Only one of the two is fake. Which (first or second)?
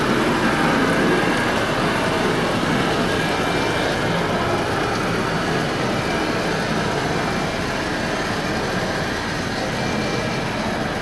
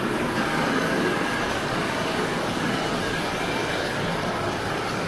second